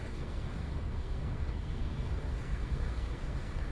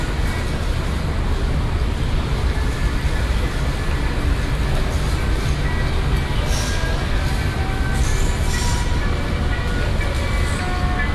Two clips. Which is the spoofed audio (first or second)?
first